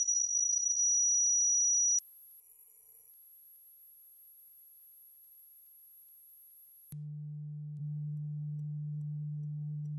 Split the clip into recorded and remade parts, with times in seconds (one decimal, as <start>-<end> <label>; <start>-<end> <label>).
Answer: 0.0-0.8 remade; 0.8-2.4 recorded; 2.4-3.1 remade; 3.1-7.8 recorded; 7.8-10.0 remade

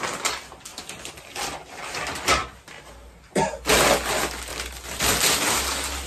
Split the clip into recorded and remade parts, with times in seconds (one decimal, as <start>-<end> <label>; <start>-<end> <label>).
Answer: 0.0-0.7 recorded; 0.7-1.2 remade; 1.2-6.1 recorded

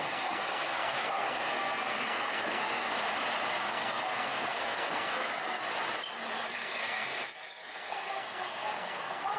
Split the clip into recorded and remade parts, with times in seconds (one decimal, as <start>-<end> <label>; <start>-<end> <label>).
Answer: 0.0-2.9 remade; 2.9-3.6 recorded; 3.6-5.6 remade; 5.6-6.5 recorded; 6.5-9.4 remade

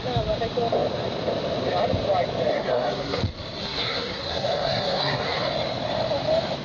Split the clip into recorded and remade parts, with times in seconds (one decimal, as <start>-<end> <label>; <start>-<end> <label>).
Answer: 0.0-2.5 recorded; 2.5-3.2 remade; 3.2-3.6 recorded; 3.6-5.4 remade; 5.4-6.6 recorded

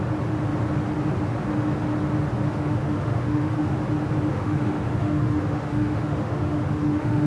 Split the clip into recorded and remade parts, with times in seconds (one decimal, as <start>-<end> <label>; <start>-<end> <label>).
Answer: 0.0-2.5 recorded; 2.5-3.8 remade; 3.8-4.3 recorded; 4.3-7.3 remade

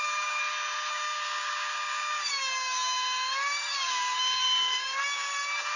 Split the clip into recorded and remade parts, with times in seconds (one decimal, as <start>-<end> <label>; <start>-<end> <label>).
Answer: 0.0-0.4 remade; 0.4-0.9 recorded; 0.9-5.8 remade

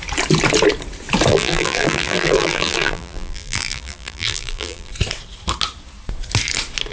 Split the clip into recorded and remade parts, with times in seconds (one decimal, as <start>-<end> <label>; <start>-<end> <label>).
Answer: 0.0-1.3 recorded; 1.3-4.9 remade; 4.9-6.9 recorded